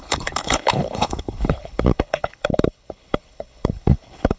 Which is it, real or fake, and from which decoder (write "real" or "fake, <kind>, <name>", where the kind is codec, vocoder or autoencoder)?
fake, codec, HILCodec